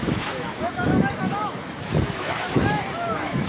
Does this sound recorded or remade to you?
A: remade